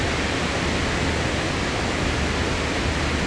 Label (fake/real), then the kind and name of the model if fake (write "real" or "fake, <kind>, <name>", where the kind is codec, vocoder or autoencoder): real